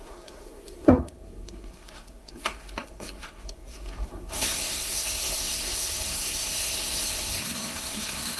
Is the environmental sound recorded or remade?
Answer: remade